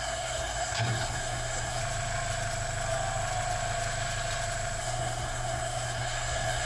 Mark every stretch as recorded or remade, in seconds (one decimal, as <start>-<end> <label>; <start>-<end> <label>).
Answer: 0.0-1.8 remade; 1.8-4.8 recorded; 4.8-6.7 remade